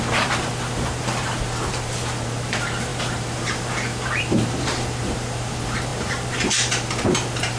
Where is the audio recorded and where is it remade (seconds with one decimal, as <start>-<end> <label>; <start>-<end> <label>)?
0.0-7.6 remade